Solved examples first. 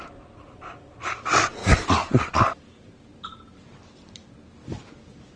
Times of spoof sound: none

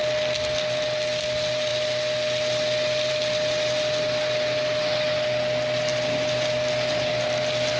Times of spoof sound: none